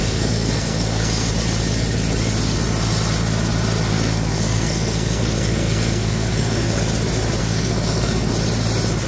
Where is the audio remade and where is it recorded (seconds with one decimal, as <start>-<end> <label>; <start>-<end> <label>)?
0.0-1.3 remade; 1.3-3.9 recorded; 3.9-6.8 remade; 6.8-7.4 recorded; 7.4-8.3 remade; 8.3-9.1 recorded